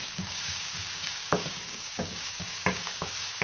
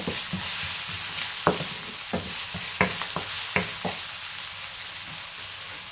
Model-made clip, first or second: first